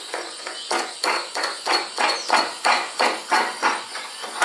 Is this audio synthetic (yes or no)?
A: yes